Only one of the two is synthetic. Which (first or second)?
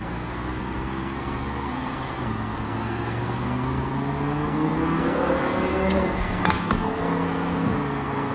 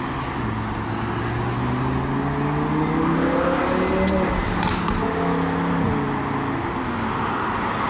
first